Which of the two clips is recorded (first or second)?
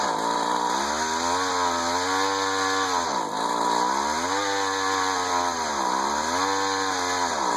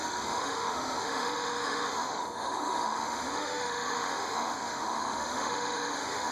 first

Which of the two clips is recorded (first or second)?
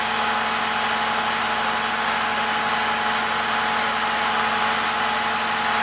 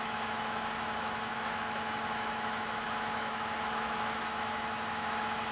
first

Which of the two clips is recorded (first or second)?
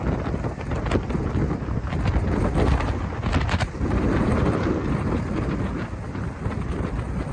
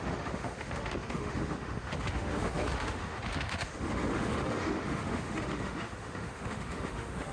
first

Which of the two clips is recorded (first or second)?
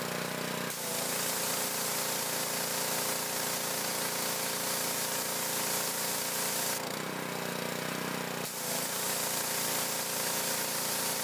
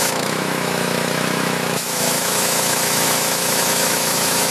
first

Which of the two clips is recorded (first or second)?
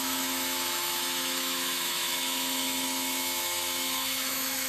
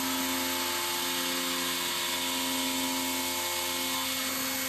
second